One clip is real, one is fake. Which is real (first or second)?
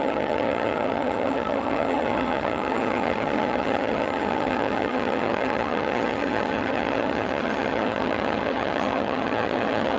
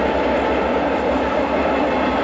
second